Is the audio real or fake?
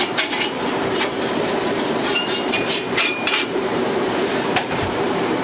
fake